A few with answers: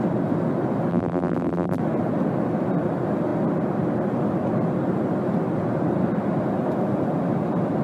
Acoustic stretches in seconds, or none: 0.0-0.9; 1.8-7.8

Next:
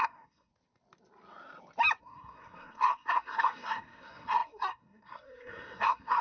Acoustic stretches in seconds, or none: 0.5-2.0

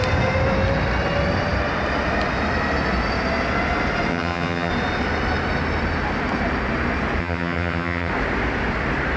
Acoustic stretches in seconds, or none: 0.0-4.1; 4.7-7.2; 8.1-9.2

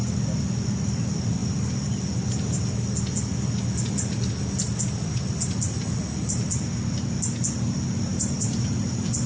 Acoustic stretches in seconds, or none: 0.0-8.1

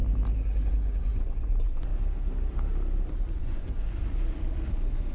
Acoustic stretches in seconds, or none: 0.0-0.7; 1.9-3.4; 4.0-5.1

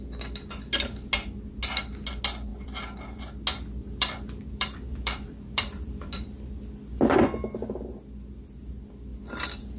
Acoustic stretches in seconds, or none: 0.0-2.5; 3.2-3.8; 6.5-9.8